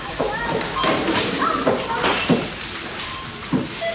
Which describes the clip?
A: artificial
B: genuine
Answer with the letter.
A